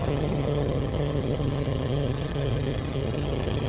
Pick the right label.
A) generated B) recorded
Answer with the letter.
A